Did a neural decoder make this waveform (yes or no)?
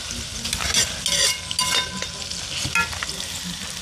no